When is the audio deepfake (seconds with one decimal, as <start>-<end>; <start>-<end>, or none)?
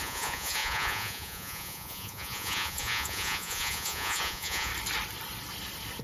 0.0-4.7